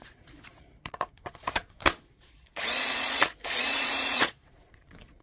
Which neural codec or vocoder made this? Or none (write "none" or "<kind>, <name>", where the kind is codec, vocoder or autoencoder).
vocoder, Vocos